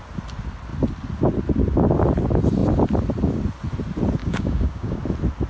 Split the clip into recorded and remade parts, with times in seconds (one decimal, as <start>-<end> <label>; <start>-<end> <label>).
0.0-4.2 recorded; 4.2-5.0 remade; 5.0-5.5 recorded